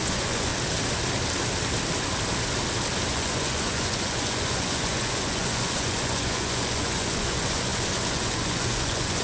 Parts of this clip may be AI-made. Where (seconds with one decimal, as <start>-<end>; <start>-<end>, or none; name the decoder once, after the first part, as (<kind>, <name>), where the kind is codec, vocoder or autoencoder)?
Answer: 0.0-0.5 (vocoder, Vocos); 3.1-9.2